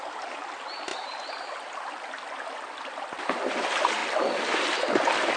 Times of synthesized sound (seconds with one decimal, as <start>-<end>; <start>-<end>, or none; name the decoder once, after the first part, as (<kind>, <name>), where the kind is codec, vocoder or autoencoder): none